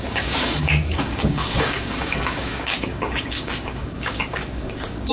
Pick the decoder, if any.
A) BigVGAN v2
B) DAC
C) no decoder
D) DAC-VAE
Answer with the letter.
B